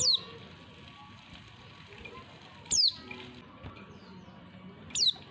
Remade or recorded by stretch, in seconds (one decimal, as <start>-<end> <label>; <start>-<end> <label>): 0.0-5.3 recorded